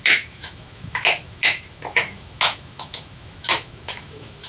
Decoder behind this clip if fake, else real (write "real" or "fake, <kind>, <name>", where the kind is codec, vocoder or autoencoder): fake, autoencoder, DAC-VAE